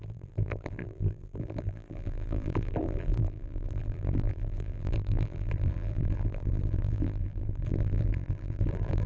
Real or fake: fake